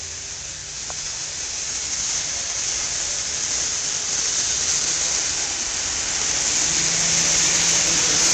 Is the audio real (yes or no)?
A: yes